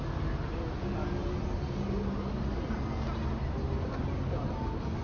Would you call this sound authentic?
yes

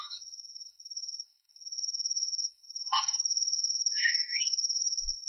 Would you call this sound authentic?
no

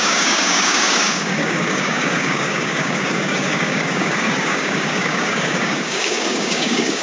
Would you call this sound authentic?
no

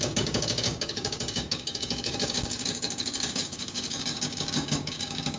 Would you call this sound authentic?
no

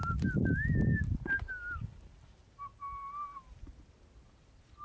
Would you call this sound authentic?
yes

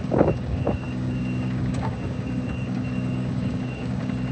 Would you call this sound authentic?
no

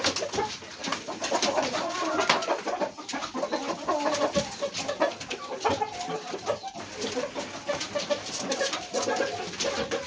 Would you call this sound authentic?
yes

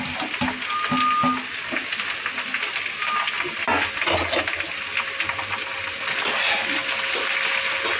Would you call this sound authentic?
yes